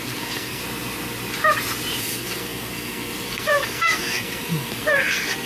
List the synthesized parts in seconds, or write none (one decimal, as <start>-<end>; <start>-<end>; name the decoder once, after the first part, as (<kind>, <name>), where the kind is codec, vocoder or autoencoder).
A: 0.0-0.6 (codec, SNAC); 2.0-5.5